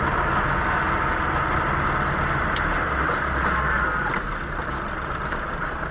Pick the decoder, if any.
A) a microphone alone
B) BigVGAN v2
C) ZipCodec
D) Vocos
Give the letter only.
A